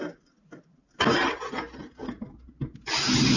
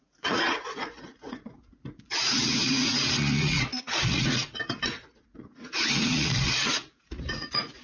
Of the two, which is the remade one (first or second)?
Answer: second